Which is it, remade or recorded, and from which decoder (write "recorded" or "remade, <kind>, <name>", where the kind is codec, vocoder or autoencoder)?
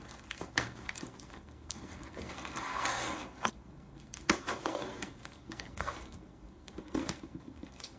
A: remade, codec, SNAC